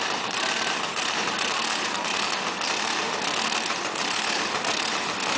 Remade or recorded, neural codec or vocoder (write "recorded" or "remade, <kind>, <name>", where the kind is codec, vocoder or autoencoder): remade, vocoder, BigVGAN v2